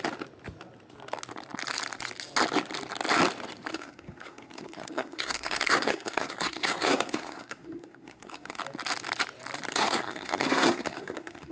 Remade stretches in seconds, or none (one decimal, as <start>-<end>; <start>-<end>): 3.7-8.6; 9.7-11.5